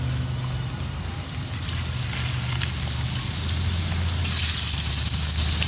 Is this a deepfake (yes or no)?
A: no